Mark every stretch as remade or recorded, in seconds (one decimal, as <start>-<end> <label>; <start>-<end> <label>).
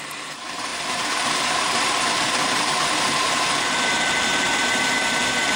0.0-5.6 remade